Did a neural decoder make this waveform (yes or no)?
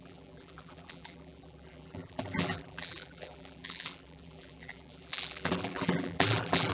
yes